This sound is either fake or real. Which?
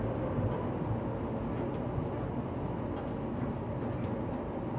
real